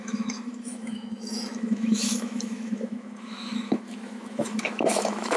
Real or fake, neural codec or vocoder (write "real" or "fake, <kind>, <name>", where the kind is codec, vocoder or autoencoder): fake, autoencoder, DAC-VAE